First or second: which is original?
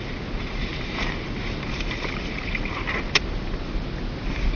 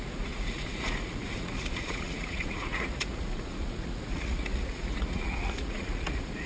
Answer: first